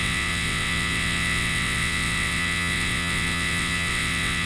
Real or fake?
fake